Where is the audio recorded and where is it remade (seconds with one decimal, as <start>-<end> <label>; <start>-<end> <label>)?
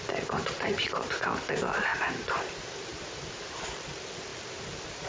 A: 0.0-0.4 recorded; 0.4-1.5 remade; 1.5-1.9 recorded; 1.9-2.5 remade; 2.5-2.9 recorded; 2.9-3.6 remade; 3.6-5.1 recorded